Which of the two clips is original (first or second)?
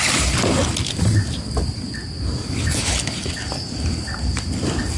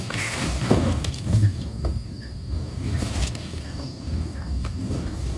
first